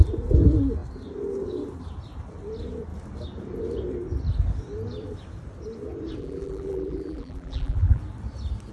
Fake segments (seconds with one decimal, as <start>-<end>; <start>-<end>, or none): 6.2-8.0